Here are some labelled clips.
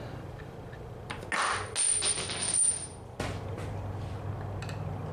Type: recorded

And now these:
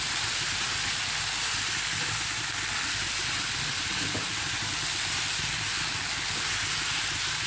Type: remade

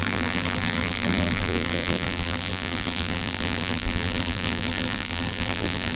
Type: remade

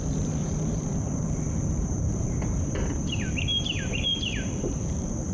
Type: remade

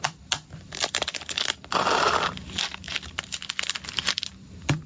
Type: remade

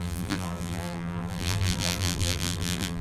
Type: remade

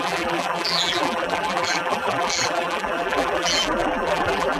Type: remade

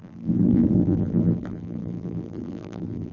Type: remade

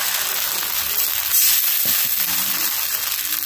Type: recorded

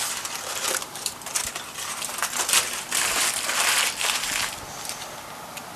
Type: remade